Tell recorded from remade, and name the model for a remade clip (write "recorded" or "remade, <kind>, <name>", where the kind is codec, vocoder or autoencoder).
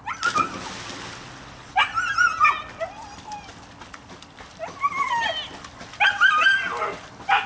recorded